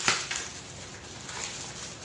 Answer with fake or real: real